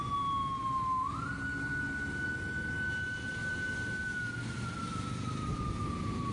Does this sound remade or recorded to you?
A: recorded